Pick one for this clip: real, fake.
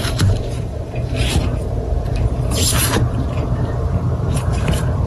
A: fake